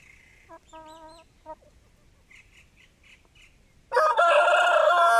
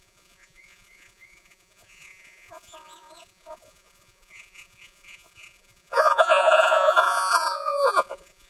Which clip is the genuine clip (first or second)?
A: first